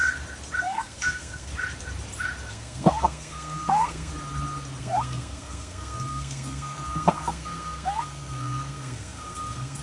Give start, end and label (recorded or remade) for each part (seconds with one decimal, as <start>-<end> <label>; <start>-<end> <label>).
0.0-0.6 recorded; 0.6-1.5 remade; 1.5-2.5 recorded; 2.5-4.1 remade; 4.1-4.8 recorded; 4.8-9.8 remade